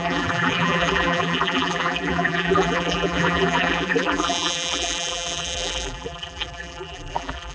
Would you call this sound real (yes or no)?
no